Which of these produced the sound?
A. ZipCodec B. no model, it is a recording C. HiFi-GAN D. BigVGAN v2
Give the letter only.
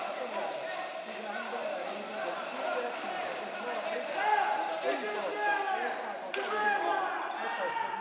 B